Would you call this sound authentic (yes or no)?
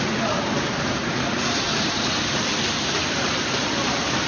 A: no